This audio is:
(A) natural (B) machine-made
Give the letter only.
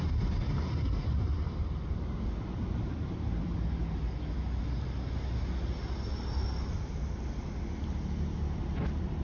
A